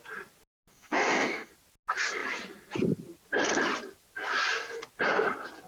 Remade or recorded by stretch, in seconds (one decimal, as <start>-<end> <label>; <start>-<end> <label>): 0.0-0.7 recorded; 0.7-1.5 remade; 1.5-5.7 recorded